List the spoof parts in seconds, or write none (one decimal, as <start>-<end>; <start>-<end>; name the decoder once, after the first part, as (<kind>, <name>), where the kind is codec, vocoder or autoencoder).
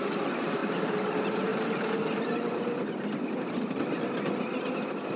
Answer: 0.6-1.1 (vocoder, BigVGAN v2); 1.5-4.0